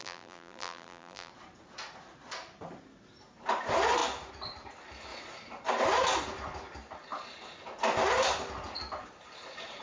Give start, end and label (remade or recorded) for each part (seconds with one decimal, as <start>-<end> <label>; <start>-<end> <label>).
0.0-1.3 remade; 1.3-9.8 recorded